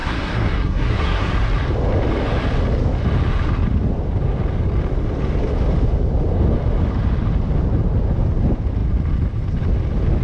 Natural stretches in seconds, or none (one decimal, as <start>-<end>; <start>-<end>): 1.3-10.2